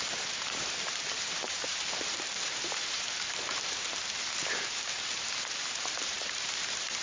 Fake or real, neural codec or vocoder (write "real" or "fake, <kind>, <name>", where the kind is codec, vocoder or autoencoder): fake, vocoder, BigVGAN v2